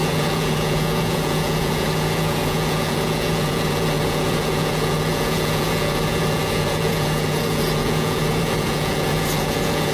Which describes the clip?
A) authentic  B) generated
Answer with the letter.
B